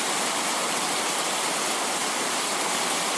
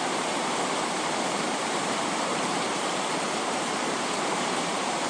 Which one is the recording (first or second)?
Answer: first